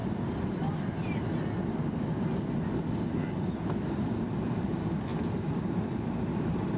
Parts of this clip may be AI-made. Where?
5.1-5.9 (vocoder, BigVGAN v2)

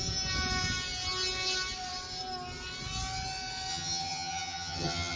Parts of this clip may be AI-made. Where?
3.7-5.2 (vocoder, HiFi-GAN)

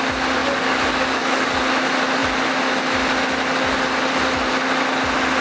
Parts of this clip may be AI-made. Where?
0.4-1.6 (codec, DAC)